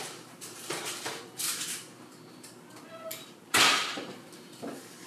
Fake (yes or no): yes